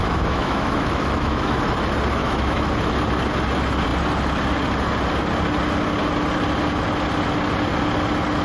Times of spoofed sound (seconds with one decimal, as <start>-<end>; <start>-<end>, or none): 0.0-1.6; 2.2-2.7